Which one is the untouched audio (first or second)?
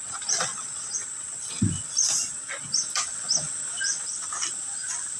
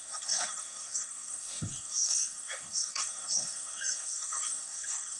first